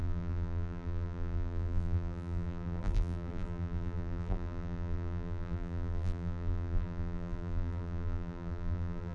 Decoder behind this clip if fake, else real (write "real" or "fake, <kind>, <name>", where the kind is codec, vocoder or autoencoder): fake, vocoder, BigVGAN v2